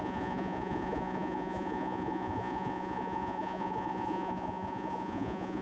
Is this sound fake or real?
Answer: fake